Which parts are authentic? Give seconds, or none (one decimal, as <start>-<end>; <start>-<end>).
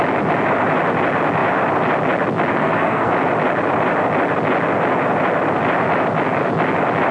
0.0-2.5; 3.1-7.1